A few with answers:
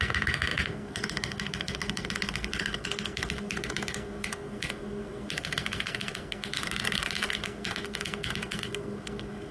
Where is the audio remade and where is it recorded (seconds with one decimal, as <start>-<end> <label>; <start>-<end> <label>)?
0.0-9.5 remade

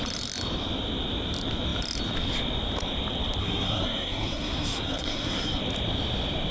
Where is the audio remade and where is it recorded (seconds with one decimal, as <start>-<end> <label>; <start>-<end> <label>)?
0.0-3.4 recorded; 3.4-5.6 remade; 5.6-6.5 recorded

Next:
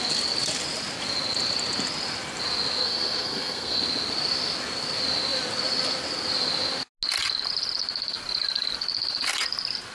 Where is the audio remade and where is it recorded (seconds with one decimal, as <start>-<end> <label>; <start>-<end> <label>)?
0.0-2.8 recorded; 2.8-3.8 remade; 3.8-9.9 recorded

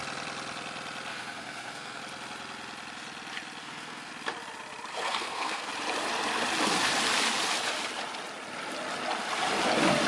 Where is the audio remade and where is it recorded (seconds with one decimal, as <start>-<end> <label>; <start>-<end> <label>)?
0.0-1.1 recorded; 1.1-2.0 remade; 2.0-3.6 recorded; 3.6-4.1 remade; 4.1-4.9 recorded; 4.9-5.7 remade; 5.7-10.1 recorded

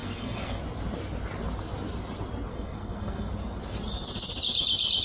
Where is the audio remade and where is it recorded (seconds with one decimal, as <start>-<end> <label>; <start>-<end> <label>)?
0.0-0.6 remade; 0.6-2.5 recorded; 2.5-3.3 remade; 3.3-5.0 recorded